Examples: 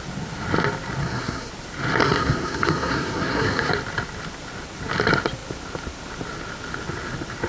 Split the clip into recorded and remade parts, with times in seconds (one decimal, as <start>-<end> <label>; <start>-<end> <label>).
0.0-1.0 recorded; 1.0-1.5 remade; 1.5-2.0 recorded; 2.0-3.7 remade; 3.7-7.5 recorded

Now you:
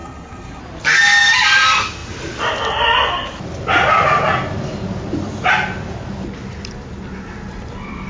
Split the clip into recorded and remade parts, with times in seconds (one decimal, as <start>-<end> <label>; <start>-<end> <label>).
0.0-0.6 remade; 0.6-8.1 recorded

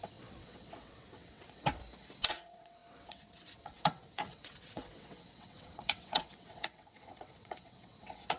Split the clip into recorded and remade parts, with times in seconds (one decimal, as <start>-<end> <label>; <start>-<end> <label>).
0.0-1.8 remade; 1.8-2.3 recorded; 2.3-8.4 remade

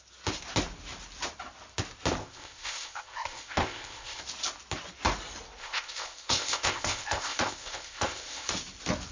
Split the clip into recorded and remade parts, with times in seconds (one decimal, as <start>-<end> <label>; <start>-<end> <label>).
0.0-2.2 recorded; 2.2-4.2 remade; 4.2-5.6 recorded; 5.6-8.5 remade; 8.5-9.1 recorded

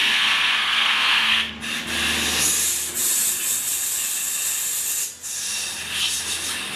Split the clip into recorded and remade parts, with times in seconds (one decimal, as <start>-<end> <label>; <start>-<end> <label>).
0.0-1.5 remade; 1.5-6.8 recorded

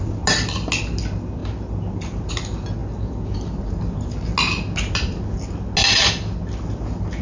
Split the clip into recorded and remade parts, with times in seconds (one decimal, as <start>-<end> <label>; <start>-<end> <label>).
0.0-7.2 recorded